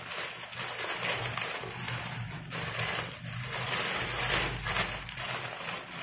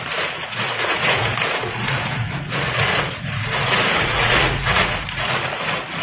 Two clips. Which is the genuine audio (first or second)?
first